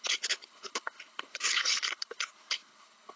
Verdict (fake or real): fake